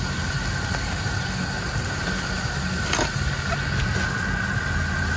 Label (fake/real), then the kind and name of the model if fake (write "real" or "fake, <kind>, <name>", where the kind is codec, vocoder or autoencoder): real